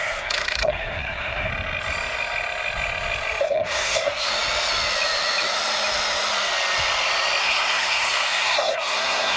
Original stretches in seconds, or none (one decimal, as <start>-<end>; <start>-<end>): 1.5-3.4; 4.3-7.4